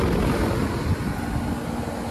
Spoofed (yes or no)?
no